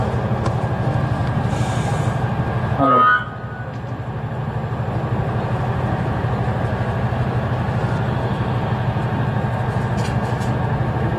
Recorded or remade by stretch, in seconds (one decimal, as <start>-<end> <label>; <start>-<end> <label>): 0.0-11.2 recorded